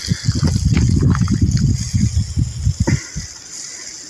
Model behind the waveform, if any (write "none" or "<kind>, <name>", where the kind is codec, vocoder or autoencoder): none